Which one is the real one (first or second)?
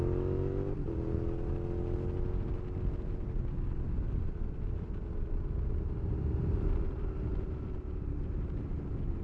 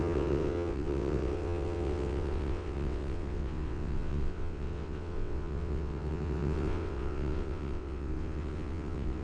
first